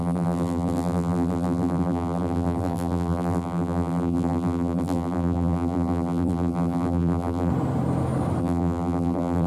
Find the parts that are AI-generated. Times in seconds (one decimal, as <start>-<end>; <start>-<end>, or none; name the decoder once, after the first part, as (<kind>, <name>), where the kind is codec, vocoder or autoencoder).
0.0-7.5 (vocoder, BigVGAN v2); 8.4-9.5